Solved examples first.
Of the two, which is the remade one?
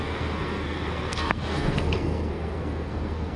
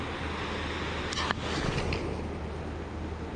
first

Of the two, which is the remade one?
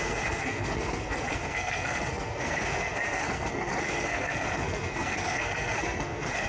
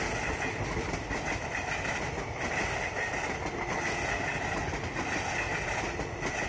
first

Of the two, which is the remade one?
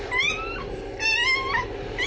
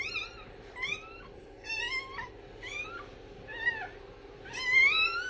second